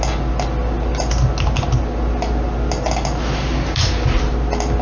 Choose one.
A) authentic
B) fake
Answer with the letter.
A